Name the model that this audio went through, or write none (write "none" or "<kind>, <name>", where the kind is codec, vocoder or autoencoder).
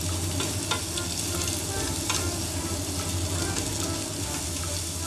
none